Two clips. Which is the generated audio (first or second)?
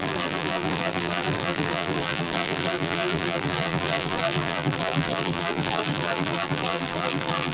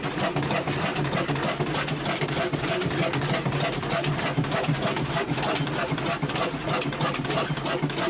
first